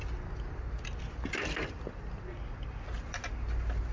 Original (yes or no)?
yes